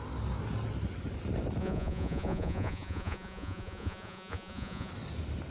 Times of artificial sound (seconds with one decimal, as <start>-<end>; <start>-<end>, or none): 1.6-4.9